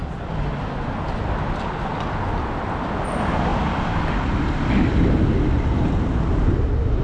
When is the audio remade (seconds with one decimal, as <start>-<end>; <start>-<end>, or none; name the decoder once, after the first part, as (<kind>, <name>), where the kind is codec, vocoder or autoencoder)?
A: none